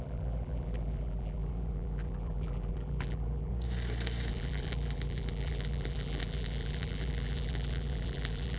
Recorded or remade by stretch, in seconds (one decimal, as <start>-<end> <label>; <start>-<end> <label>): 0.0-3.5 remade; 3.5-4.3 recorded; 4.3-8.6 remade